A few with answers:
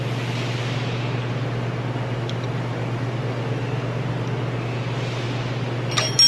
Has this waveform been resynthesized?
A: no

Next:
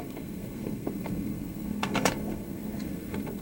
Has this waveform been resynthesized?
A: yes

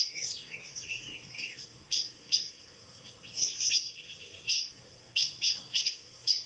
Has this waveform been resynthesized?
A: yes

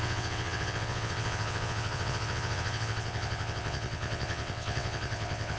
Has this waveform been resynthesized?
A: yes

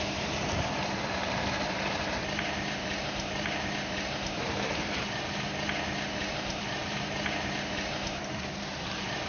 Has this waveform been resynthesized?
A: yes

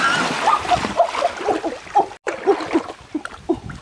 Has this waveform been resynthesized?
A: no